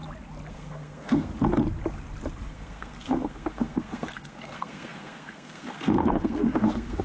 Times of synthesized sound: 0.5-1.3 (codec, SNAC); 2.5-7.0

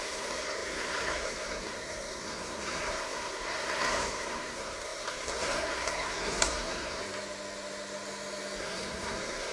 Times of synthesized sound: 0.0-7.0 (codec, SNAC); 8.6-9.5

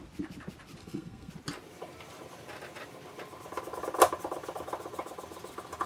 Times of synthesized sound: 0.8-1.3 (codec, SNAC)